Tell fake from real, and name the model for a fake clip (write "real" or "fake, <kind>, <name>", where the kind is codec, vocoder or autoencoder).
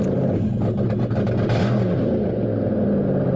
real